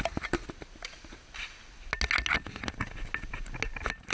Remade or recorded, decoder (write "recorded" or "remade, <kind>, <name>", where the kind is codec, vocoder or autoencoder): recorded